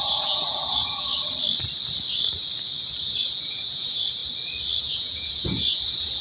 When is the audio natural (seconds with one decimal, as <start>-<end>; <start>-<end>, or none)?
1.1-3.0; 4.2-4.8